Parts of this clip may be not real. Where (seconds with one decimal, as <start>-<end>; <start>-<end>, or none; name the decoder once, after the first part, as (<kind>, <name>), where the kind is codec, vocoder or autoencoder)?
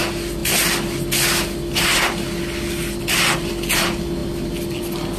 none